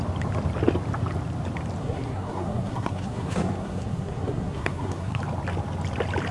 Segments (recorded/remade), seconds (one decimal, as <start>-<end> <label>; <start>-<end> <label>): 0.0-1.8 recorded; 1.8-5.2 remade; 5.2-6.3 recorded